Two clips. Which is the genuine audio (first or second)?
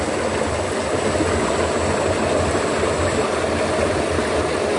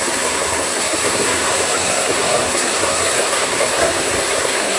first